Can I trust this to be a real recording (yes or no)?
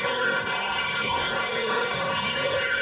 no